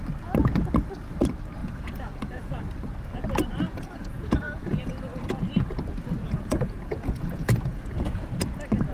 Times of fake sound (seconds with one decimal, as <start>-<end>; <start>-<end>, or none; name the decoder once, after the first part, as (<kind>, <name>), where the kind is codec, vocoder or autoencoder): 1.6-2.6 (vocoder, Vocos); 3.7-4.9; 6.2-8.2